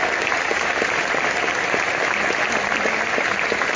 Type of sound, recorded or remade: recorded